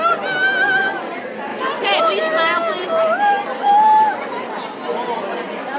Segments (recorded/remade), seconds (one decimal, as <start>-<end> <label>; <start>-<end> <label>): 0.0-1.5 recorded; 1.5-2.0 remade; 2.0-2.8 recorded; 2.8-3.7 remade; 3.7-5.8 recorded